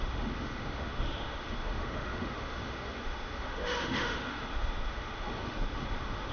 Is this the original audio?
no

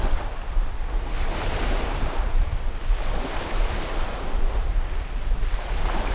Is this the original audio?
yes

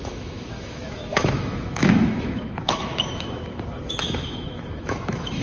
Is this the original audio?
no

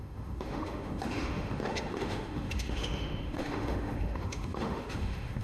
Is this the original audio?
no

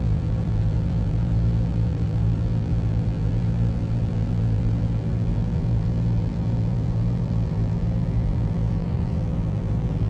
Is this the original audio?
no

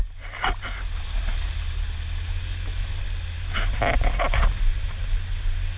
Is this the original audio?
yes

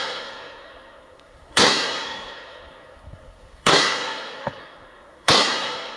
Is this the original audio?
no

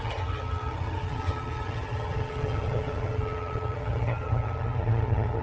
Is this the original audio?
no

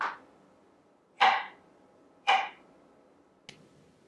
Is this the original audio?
yes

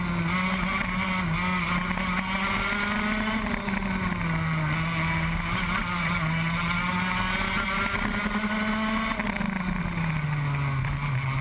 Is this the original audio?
yes